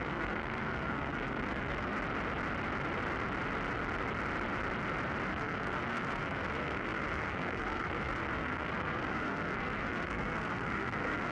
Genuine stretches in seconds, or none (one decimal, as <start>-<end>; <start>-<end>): 1.9-5.3